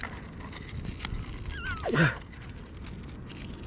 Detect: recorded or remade recorded